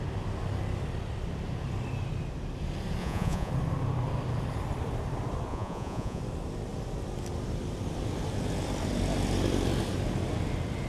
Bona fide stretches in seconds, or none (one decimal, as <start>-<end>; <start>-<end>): 0.0-3.0; 3.5-5.5; 6.2-10.9